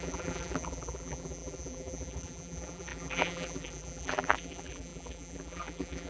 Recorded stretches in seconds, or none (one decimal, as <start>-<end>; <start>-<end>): none